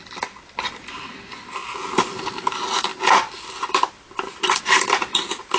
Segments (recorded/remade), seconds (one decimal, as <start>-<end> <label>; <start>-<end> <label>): 0.0-1.6 remade; 1.6-2.4 recorded; 2.4-5.6 remade